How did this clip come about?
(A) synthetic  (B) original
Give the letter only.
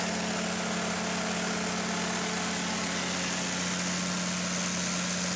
B